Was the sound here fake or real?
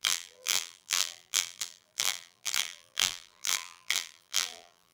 fake